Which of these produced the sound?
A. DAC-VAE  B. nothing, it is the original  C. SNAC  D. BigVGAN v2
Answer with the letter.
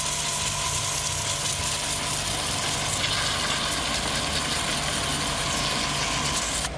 B